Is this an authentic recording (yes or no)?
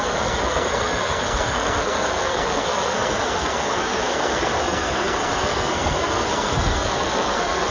no